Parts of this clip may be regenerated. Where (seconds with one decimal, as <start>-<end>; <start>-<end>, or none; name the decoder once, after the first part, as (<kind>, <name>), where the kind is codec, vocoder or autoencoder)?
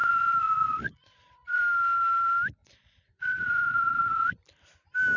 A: 0.0-1.6 (vocoder, Vocos); 2.6-4.3